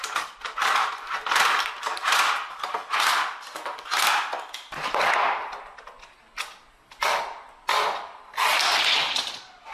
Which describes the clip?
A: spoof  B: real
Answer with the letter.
B